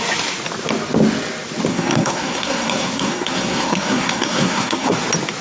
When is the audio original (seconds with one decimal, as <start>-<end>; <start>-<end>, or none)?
0.0-1.7; 4.9-5.4